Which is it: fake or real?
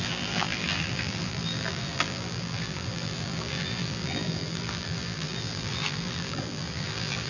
fake